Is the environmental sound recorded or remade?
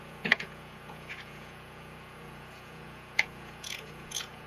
remade